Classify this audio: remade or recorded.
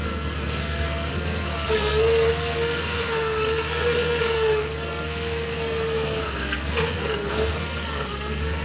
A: remade